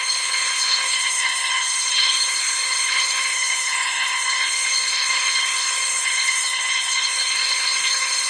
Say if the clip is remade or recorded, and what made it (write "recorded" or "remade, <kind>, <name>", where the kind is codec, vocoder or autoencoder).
remade, codec, HILCodec